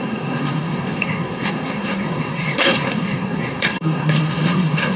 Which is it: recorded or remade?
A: remade